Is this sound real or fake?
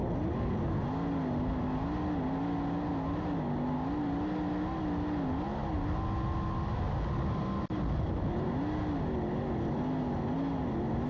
real